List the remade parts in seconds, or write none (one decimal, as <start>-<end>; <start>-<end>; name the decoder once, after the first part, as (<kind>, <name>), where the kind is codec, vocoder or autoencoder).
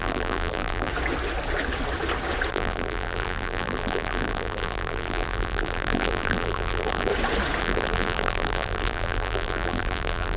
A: 0.0-0.9 (vocoder, BigVGAN v2); 2.5-7.1; 7.6-10.4